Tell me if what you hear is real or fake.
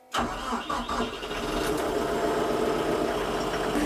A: real